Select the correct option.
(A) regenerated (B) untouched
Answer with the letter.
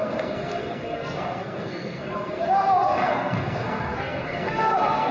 A